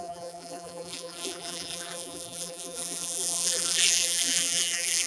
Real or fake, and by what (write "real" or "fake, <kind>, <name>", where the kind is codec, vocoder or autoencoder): fake, vocoder, BigVGAN v2